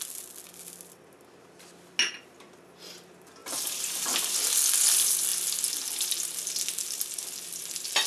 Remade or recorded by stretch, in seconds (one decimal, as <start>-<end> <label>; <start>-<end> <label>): 0.0-8.1 recorded